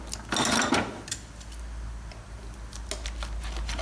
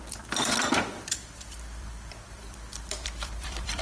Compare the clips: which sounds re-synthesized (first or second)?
second